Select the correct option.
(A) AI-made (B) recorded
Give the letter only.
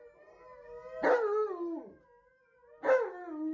B